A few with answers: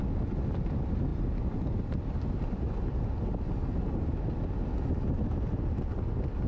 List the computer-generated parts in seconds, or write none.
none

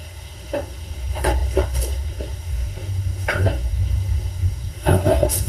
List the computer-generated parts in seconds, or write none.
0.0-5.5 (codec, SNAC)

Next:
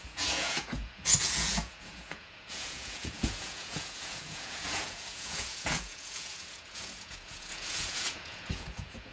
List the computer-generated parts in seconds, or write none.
0.0-9.1 (vocoder, Vocos)

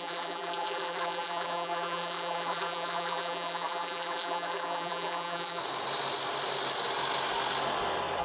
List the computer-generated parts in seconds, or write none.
0.0-5.6 (vocoder, BigVGAN v2)

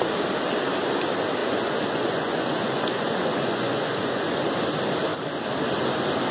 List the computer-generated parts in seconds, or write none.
1.4-4.5 (vocoder, Vocos)

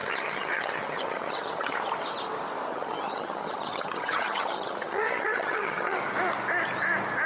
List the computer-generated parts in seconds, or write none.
0.0-1.8 (vocoder, HiFi-GAN); 2.7-6.0

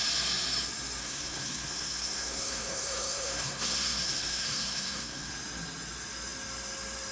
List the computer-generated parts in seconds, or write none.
1.0-5.3 (codec, SNAC)